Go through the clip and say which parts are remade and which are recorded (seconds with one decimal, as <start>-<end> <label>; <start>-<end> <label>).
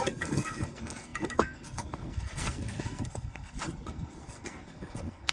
0.0-5.3 remade